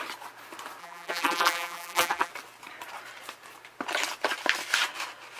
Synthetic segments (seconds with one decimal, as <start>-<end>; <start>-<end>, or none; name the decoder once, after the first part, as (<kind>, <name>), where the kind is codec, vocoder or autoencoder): 0.8-2.3 (vocoder, BigVGAN v2)